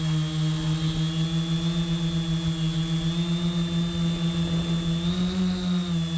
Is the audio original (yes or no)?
yes